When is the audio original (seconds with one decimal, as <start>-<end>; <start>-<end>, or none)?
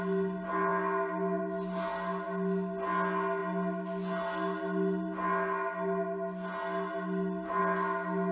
0.0-8.3